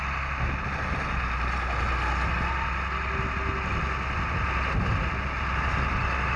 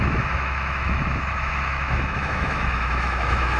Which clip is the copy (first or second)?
second